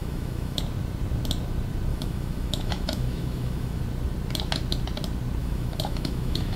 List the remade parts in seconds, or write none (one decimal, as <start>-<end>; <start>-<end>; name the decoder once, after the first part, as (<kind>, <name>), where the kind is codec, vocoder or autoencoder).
0.0-0.6 (autoencoder, DAC-VAE); 1.9-3.8; 5.4-6.6